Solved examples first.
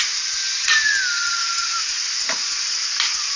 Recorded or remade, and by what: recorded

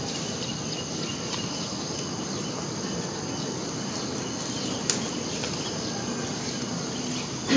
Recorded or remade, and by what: recorded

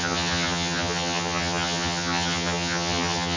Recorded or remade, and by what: remade, vocoder, HiFi-GAN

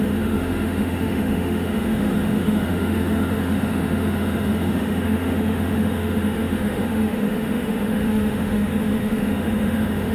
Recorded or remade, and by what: remade, autoencoder, DAC-VAE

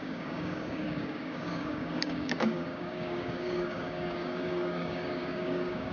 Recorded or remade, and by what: remade, codec, DAC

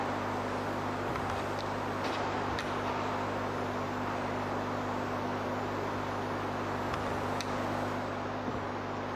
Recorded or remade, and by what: recorded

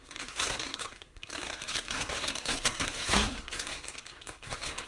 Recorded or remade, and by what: remade, codec, SNAC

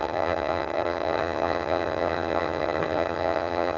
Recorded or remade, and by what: remade, vocoder, HiFi-GAN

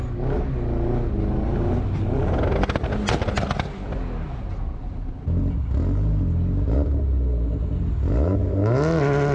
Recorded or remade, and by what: recorded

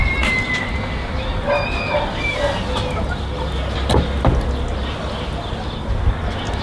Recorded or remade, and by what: recorded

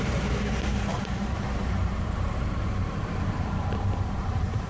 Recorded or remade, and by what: remade, vocoder, BigVGAN v2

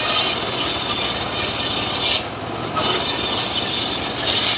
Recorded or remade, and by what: recorded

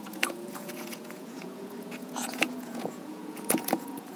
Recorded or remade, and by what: remade, vocoder, Vocos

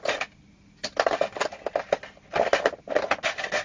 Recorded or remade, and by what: recorded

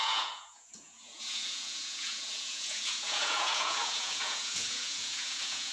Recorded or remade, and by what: remade, vocoder, Vocos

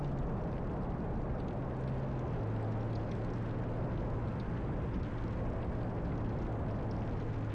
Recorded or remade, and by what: recorded